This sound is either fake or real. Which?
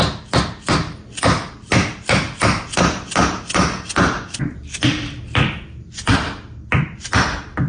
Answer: real